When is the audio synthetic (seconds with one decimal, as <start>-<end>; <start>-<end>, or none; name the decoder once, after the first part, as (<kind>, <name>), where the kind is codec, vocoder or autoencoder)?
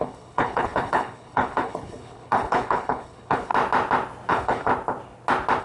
0.0-3.5 (codec, HILCodec); 4.3-4.7